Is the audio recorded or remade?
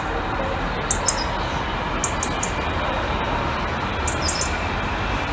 recorded